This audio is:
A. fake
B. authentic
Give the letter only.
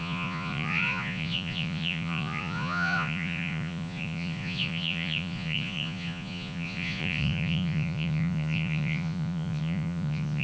A